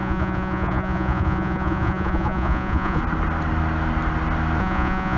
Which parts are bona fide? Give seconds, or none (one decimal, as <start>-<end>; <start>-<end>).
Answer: 3.0-4.6